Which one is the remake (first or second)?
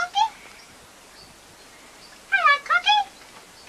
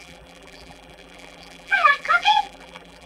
second